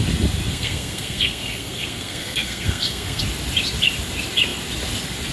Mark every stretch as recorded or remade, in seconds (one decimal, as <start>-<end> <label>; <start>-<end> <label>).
0.0-0.5 recorded; 0.5-3.2 remade; 3.2-5.3 recorded